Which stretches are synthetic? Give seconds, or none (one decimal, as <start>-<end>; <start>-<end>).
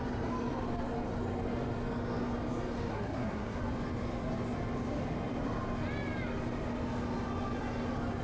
2.9-3.6